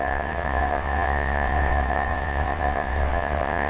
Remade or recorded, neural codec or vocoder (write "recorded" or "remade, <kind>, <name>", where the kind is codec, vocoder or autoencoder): remade, vocoder, WaveNeXt